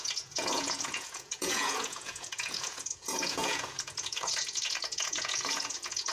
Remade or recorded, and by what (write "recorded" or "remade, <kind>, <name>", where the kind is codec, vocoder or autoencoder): remade, vocoder, Vocos